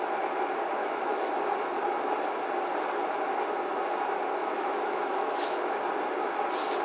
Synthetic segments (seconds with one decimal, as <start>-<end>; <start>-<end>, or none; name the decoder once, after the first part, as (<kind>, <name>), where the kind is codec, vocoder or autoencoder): 0.8-1.3 (autoencoder, DAC-VAE); 4.4-5.6